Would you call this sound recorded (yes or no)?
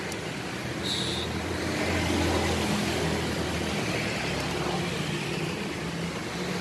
yes